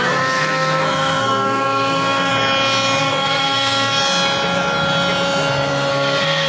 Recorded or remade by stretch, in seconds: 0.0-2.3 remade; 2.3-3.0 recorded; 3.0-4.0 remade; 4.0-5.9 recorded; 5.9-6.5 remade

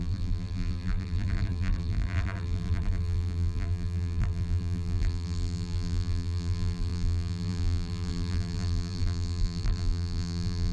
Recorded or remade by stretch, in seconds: 0.0-10.7 remade

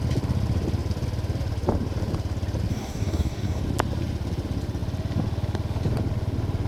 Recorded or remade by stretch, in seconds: 0.0-2.7 recorded; 2.7-3.6 remade; 3.6-6.7 recorded

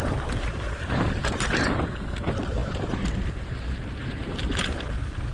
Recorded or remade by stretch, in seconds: 0.0-4.6 remade; 4.6-5.3 recorded

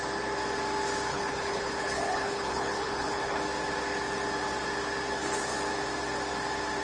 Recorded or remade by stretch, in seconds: 0.0-1.1 recorded; 1.1-3.4 remade; 3.4-6.8 recorded

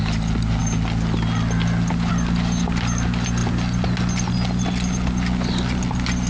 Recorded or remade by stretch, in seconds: 0.0-6.3 recorded

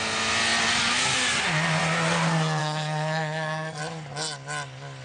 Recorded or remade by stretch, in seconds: 0.0-2.6 recorded; 2.6-3.8 remade; 3.8-5.0 recorded

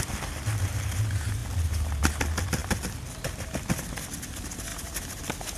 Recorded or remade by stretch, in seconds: 0.0-5.6 recorded